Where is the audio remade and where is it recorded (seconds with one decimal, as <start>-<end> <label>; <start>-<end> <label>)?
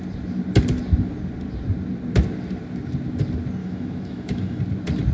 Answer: 0.0-3.6 recorded; 3.6-4.6 remade; 4.6-5.1 recorded